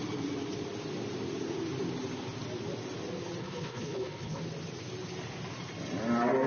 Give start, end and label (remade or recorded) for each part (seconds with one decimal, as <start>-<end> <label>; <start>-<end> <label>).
0.0-3.4 recorded; 3.4-4.4 remade; 4.4-6.5 recorded